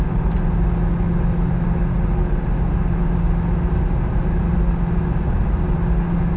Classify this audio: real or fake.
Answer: real